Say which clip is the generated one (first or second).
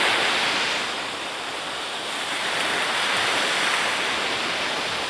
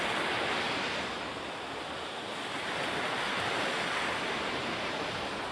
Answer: second